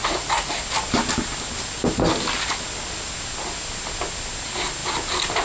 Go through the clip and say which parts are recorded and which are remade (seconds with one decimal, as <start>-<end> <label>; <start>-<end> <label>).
0.0-0.6 remade; 0.6-5.4 recorded